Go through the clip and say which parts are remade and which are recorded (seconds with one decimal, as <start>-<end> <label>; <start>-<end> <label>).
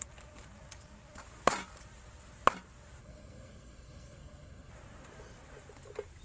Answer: 0.0-3.0 recorded; 3.0-4.7 remade; 4.7-6.2 recorded